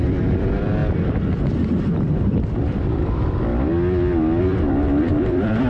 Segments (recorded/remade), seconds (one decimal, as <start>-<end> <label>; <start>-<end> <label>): 0.0-0.8 remade; 0.8-1.9 recorded; 1.9-3.5 remade; 3.5-4.4 recorded; 4.4-5.7 remade

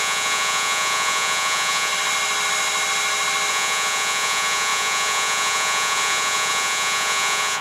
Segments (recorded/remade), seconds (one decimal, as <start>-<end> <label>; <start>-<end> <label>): 0.0-1.9 remade; 1.9-3.5 recorded; 3.5-7.6 remade

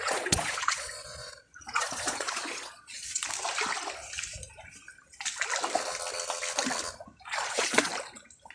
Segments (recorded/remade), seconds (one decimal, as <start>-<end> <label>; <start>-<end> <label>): 0.0-3.2 remade; 3.2-7.2 recorded; 7.2-7.9 remade; 7.9-8.5 recorded

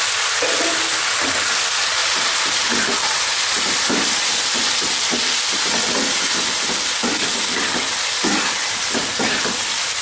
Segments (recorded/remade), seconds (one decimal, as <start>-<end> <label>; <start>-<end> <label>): 0.0-2.0 recorded; 2.0-2.6 remade; 2.6-10.0 recorded

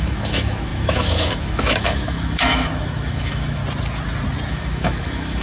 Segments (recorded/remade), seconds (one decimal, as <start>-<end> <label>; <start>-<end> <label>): 0.0-3.6 remade; 3.6-4.5 recorded; 4.5-5.4 remade

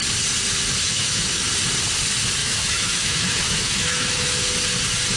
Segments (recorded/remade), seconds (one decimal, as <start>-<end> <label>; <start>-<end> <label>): 0.0-0.8 recorded; 0.8-1.4 remade; 1.4-2.4 recorded; 2.4-4.5 remade; 4.5-5.2 recorded